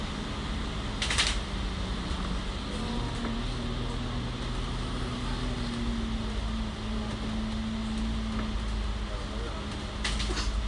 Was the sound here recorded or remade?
recorded